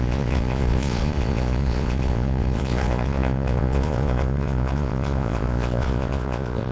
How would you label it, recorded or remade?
remade